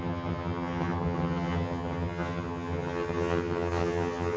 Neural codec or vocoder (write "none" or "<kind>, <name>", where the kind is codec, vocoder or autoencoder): vocoder, HiFi-GAN